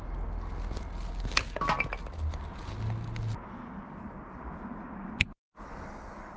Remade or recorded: recorded